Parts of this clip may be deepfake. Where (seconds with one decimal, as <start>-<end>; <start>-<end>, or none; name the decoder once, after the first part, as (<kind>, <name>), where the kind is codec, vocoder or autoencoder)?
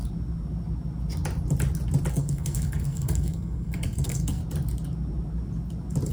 2.1-4.4 (codec, SNAC)